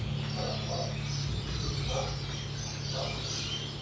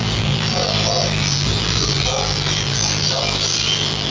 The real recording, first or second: first